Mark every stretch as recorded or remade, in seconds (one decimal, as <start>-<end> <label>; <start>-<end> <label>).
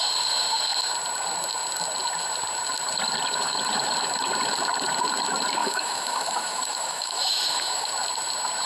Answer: 0.0-5.6 recorded; 5.6-7.9 remade; 7.9-8.7 recorded